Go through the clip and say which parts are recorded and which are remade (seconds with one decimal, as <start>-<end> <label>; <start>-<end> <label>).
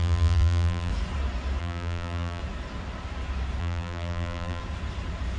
0.0-0.9 remade; 0.9-1.6 recorded; 1.6-2.4 remade; 2.4-3.6 recorded; 3.6-4.6 remade; 4.6-5.4 recorded